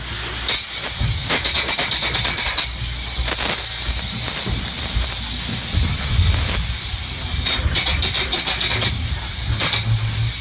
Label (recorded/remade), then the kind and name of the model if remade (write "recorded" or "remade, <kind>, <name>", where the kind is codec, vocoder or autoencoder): recorded